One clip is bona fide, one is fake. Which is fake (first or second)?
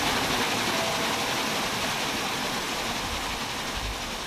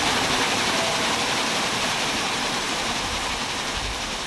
second